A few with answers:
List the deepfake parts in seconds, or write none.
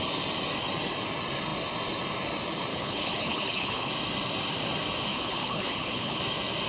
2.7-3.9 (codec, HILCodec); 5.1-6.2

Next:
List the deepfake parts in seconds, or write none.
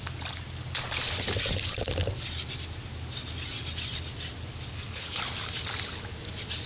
4.7-5.2 (codec, HILCodec)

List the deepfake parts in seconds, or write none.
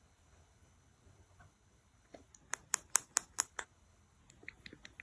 0.0-2.3 (codec, HILCodec); 3.4-4.2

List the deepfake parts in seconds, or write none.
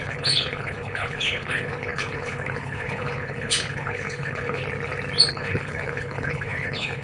0.0-4.6 (codec, HILCodec); 5.3-7.0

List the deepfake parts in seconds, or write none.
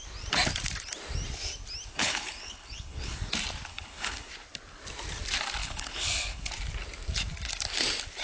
1.9-3.3 (codec, HILCodec); 3.7-4.3; 5.6-6.5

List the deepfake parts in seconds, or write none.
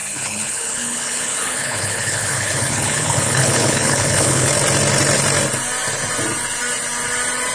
0.0-4.5 (codec, HILCodec)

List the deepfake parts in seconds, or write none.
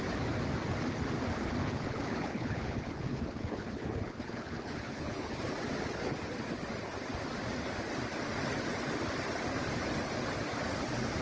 1.6-5.4 (codec, HILCodec)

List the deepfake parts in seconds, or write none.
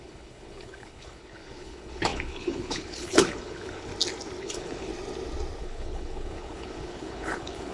0.0-3.9 (codec, HILCodec); 4.4-4.9; 5.6-7.7